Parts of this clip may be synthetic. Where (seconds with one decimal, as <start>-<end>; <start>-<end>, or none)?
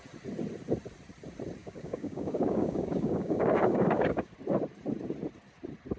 1.6-4.3